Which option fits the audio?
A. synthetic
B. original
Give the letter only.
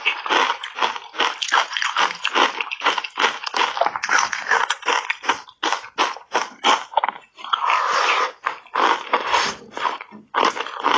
B